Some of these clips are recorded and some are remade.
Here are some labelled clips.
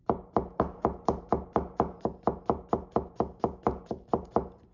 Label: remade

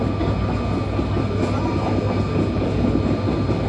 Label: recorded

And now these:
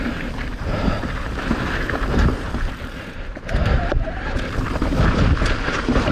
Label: remade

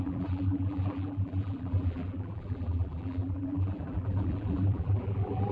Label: remade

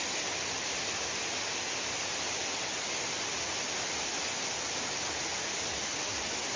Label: recorded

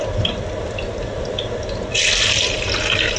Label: remade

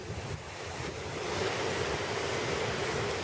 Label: recorded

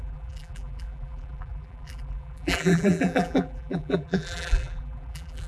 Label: remade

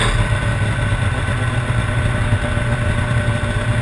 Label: recorded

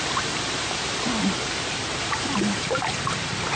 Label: remade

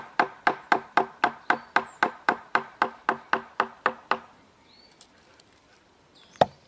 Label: recorded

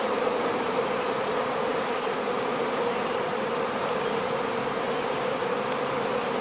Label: remade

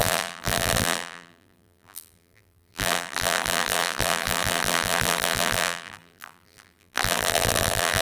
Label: remade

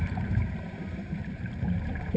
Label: remade